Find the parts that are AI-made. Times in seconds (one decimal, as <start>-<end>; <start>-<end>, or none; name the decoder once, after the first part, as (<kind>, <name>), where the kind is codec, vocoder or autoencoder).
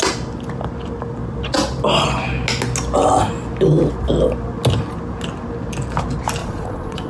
6.4-7.1 (vocoder, Vocos)